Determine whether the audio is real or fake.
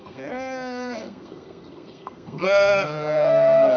fake